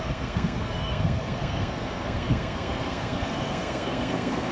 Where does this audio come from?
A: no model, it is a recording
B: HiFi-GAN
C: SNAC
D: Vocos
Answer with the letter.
C